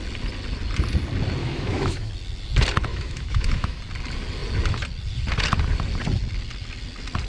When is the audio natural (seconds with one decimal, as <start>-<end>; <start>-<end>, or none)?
0.0-1.4; 2.1-2.9; 3.8-7.3